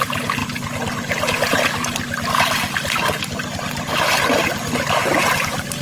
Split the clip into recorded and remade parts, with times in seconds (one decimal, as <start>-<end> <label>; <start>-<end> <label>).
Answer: 0.0-5.8 recorded